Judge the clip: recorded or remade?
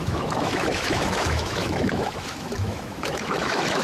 remade